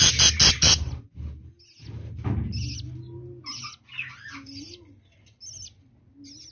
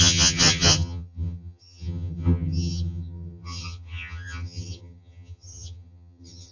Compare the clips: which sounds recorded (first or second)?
first